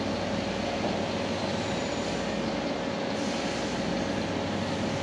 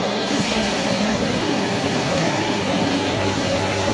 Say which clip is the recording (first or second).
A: first